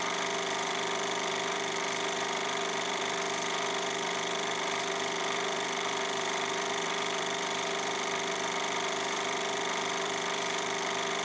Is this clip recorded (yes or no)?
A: no